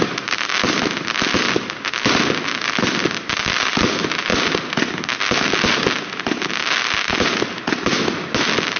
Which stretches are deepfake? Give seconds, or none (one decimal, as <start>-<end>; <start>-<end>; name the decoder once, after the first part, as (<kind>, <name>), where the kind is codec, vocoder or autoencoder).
none